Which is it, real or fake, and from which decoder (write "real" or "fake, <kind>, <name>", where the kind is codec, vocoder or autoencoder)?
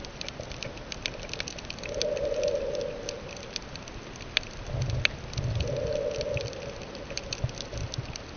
real